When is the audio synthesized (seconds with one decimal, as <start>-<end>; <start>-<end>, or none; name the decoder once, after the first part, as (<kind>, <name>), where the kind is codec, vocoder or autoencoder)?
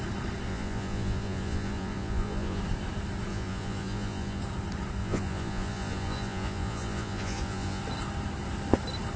0.5-2.6 (vocoder, Vocos); 3.3-4.4; 5.0-7.8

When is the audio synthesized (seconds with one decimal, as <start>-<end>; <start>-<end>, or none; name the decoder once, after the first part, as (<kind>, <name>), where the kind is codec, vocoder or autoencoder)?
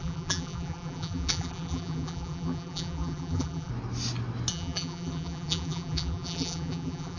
0.0-3.7 (vocoder, BigVGAN v2); 4.5-7.2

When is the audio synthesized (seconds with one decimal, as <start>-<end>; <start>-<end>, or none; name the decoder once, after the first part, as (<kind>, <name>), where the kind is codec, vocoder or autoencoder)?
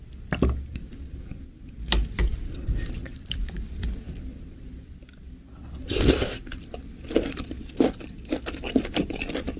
0.7-1.3 (vocoder, BigVGAN v2); 2.2-6.7